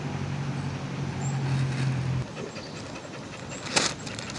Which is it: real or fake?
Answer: real